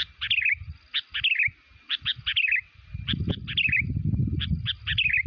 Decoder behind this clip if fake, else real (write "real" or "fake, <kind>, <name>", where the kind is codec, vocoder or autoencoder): real